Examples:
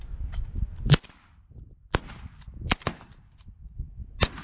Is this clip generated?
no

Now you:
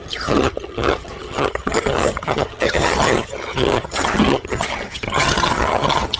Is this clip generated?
yes